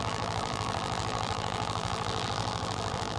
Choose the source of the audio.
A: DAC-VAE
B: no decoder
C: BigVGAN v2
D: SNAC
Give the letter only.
C